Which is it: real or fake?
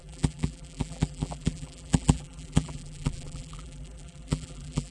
fake